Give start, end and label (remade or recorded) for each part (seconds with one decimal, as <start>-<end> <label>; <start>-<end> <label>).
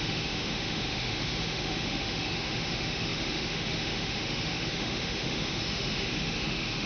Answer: 0.0-6.9 remade